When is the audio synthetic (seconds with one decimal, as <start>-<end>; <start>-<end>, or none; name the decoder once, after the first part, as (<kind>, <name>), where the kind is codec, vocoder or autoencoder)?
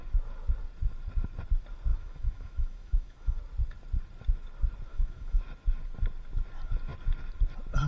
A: 1.9-3.4 (autoencoder, DAC-VAE); 4.9-5.4